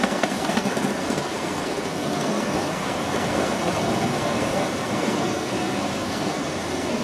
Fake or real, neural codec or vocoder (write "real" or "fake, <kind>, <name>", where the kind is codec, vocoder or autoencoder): fake, codec, SNAC